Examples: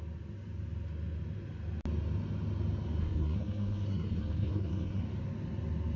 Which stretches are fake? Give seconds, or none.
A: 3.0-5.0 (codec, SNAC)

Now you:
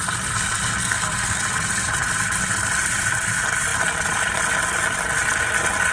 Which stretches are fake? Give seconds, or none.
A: 0.8-1.4 (codec, SNAC)

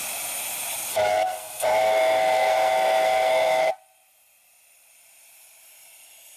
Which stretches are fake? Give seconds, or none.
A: 0.9-3.7 (codec, SNAC)

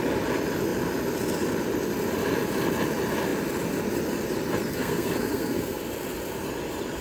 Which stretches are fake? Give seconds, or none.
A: 4.7-5.8 (codec, SNAC)

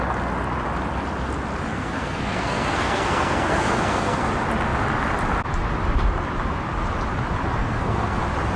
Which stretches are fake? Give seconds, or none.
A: 1.7-4.3 (codec, SNAC); 7.6-8.2

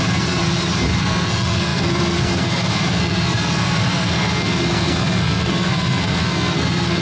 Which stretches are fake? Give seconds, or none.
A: 0.0-0.4 (codec, SNAC); 1.0-7.0

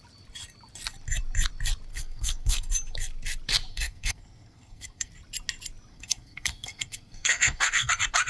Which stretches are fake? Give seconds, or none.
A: 1.9-2.7 (codec, SNAC); 3.7-5.1; 5.9-7.9

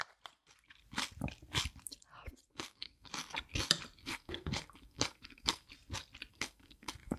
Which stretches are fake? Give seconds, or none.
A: 2.5-3.1 (codec, SNAC); 4.0-5.7; 6.3-7.2